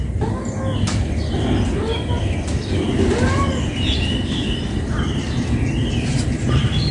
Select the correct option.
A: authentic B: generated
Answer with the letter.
A